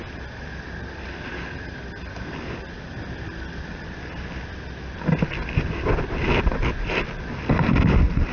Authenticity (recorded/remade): recorded